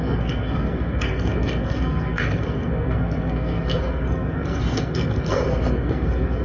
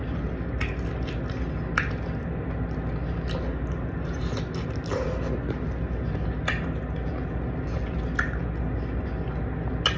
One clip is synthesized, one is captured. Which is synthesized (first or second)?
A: first